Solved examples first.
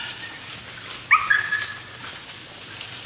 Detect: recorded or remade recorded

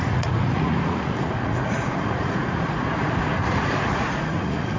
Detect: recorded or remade remade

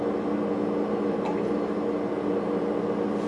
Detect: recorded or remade recorded